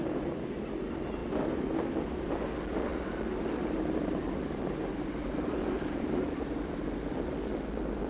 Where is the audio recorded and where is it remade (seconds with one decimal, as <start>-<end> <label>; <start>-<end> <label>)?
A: 0.0-8.1 recorded